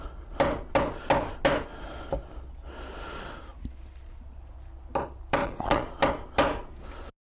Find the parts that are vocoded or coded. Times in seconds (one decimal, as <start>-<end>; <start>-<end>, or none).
5.4-6.0